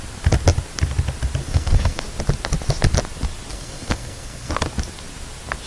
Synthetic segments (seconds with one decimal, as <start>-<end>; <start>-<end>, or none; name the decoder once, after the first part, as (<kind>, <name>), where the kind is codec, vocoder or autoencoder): 1.4-2.0 (codec, SNAC); 3.5-4.5